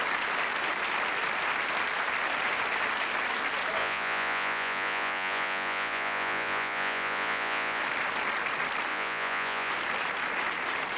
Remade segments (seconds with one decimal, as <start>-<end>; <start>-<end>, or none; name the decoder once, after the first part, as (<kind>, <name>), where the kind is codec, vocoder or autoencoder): 3.8-7.8 (vocoder, Vocos); 8.9-9.7